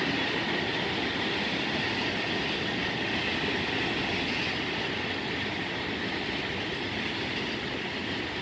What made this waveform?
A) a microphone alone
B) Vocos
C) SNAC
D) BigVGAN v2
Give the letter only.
A